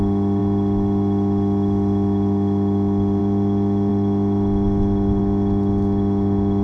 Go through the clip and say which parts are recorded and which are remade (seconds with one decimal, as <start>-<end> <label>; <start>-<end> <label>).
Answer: 0.0-6.6 recorded